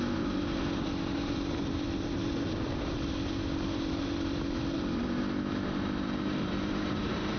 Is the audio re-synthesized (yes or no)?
yes